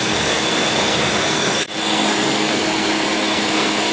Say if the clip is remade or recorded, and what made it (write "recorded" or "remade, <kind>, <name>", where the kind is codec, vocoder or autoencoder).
remade, codec, SNAC